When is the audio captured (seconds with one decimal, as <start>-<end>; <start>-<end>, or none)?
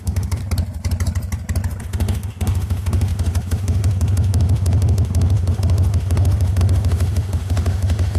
0.4-1.8